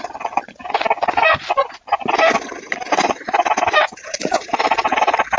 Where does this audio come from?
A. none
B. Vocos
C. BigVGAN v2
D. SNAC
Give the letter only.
A